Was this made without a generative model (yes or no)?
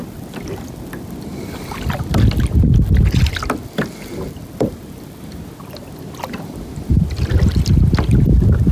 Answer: yes